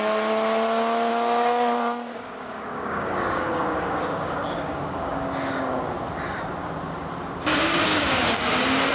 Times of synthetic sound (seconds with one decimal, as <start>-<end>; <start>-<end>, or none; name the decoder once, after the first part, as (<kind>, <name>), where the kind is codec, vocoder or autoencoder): 1.1-5.8 (codec, DAC); 7.9-8.5